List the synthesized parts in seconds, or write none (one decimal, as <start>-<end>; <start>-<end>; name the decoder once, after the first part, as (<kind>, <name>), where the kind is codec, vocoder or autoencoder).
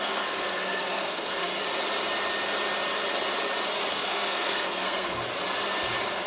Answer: 0.0-1.5 (codec, SNAC); 3.9-5.2